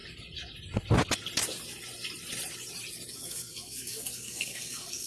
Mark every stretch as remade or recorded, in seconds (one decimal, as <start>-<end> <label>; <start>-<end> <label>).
0.0-3.1 recorded; 3.1-5.1 remade